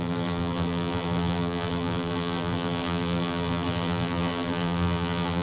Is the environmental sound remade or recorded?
remade